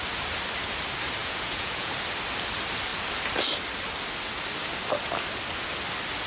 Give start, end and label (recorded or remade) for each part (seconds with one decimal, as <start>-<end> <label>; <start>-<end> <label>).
0.0-1.2 recorded; 1.2-1.9 remade; 1.9-6.3 recorded

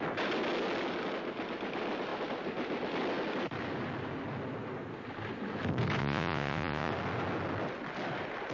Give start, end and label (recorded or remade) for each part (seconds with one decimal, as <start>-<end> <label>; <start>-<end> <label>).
0.0-6.0 recorded; 6.0-6.9 remade; 6.9-8.5 recorded

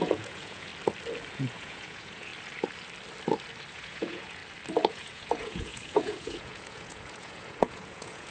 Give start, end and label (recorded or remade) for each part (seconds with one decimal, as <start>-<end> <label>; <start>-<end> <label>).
0.0-0.7 remade; 0.7-1.3 recorded; 1.3-2.3 remade; 2.3-3.7 recorded; 3.7-4.4 remade; 4.4-4.9 recorded; 4.9-8.3 remade

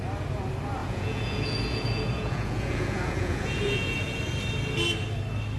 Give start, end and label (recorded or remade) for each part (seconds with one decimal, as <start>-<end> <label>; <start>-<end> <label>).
0.0-0.8 recorded; 0.8-4.2 remade; 4.2-5.6 recorded